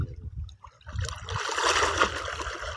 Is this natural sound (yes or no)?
yes